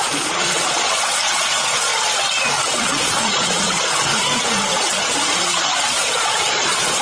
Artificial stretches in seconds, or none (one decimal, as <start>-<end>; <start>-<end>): 0.0-1.9; 2.8-4.1; 4.7-7.0